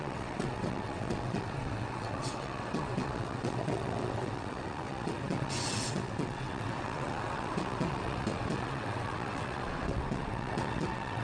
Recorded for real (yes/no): no